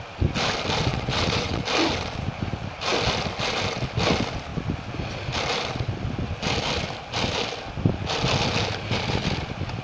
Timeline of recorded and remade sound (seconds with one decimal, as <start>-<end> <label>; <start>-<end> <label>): 0.0-0.9 recorded; 0.9-1.6 remade; 1.6-9.8 recorded